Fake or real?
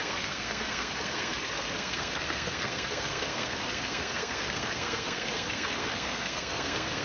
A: fake